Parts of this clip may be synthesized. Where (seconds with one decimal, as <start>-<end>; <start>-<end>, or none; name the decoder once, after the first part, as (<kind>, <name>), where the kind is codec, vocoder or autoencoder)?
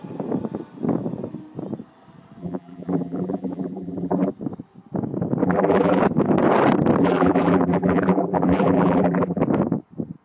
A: 2.4-4.3 (vocoder, BigVGAN v2); 5.4-6.0; 7.0-9.4